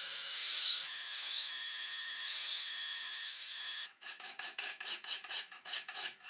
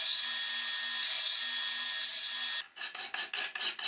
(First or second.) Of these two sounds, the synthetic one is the first